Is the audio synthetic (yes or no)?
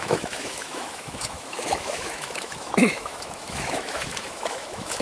yes